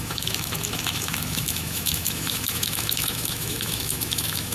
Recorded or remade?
remade